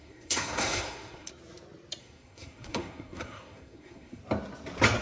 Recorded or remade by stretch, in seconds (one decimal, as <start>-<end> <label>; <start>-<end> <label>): 0.0-1.3 remade; 1.3-2.0 recorded; 2.0-4.2 remade; 4.2-5.0 recorded